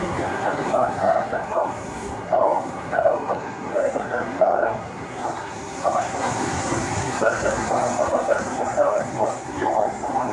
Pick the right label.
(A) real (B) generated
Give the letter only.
B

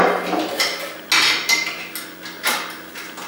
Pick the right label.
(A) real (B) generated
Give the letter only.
A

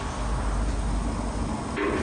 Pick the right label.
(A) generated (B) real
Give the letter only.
B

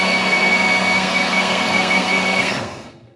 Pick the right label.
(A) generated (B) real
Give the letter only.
A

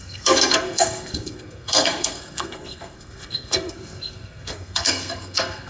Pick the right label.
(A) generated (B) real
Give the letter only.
A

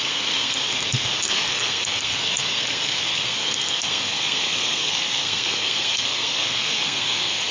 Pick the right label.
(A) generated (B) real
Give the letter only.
A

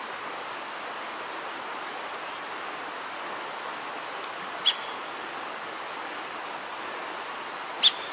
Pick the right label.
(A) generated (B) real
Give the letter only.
B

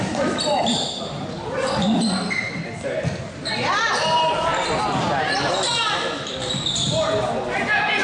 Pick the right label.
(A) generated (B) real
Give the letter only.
B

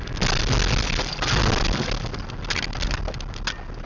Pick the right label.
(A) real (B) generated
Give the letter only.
A